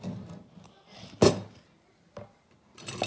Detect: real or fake real